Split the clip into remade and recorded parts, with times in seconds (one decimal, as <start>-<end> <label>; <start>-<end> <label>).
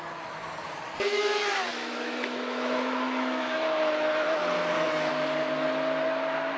0.0-1.1 recorded; 1.1-5.1 remade; 5.1-6.6 recorded